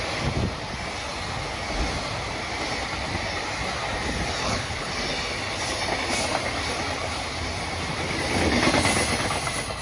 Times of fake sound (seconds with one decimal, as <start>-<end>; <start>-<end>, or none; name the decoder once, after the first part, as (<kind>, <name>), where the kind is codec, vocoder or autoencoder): 4.4-4.9 (codec, HILCodec)